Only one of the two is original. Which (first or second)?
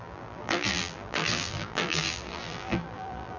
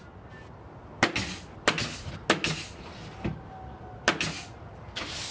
second